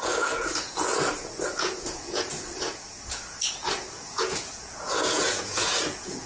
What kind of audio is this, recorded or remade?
remade